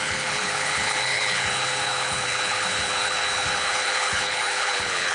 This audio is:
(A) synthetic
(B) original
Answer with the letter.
A